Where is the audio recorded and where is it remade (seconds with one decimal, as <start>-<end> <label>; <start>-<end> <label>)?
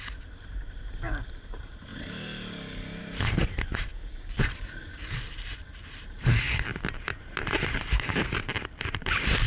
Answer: 0.0-1.9 remade; 1.9-3.0 recorded; 3.0-3.9 remade; 3.9-5.7 recorded; 5.7-9.5 remade